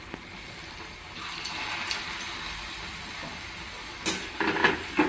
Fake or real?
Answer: real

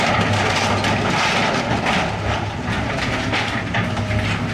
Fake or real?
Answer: real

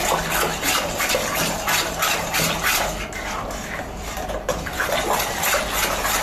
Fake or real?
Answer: real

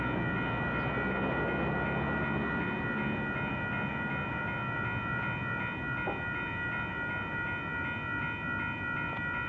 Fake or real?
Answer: real